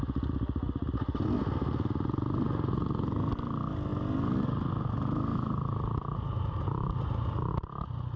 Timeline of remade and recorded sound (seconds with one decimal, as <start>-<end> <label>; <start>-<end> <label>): 0.0-5.3 recorded; 5.3-7.5 remade; 7.5-8.2 recorded